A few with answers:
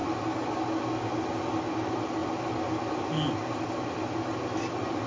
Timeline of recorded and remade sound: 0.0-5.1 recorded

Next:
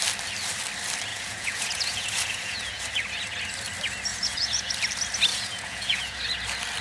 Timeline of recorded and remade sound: 0.0-1.1 recorded; 1.1-2.8 remade; 2.8-4.1 recorded; 4.1-4.7 remade; 4.7-5.3 recorded; 5.3-6.2 remade; 6.2-6.8 recorded

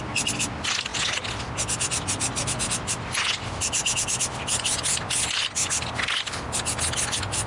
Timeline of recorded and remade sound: 0.0-7.5 recorded

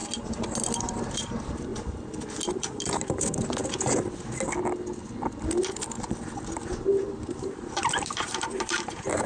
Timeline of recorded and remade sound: 0.0-0.8 recorded; 0.8-1.7 remade; 1.7-2.6 recorded; 2.6-3.6 remade; 3.6-6.9 recorded; 6.9-9.3 remade

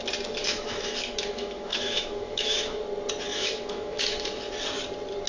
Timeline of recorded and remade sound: 0.0-0.4 recorded; 0.4-2.8 remade; 2.8-3.3 recorded; 3.3-4.4 remade; 4.4-5.3 recorded